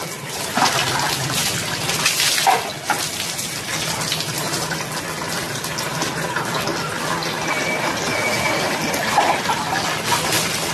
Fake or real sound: fake